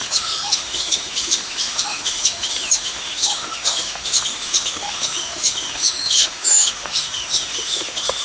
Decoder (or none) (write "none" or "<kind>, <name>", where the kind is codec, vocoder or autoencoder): autoencoder, DAC-VAE